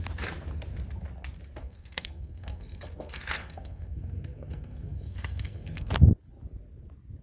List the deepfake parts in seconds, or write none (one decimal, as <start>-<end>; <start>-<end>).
1.6-5.9